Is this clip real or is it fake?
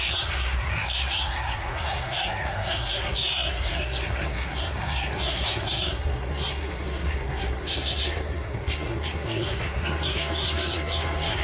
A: fake